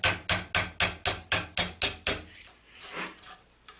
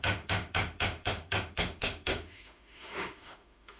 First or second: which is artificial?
second